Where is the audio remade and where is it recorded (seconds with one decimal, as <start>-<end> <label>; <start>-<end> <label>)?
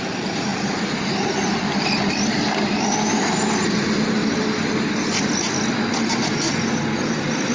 0.0-7.5 recorded